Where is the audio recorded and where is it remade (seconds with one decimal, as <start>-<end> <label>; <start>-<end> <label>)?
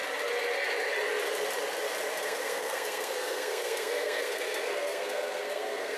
0.0-2.2 recorded; 2.2-6.0 remade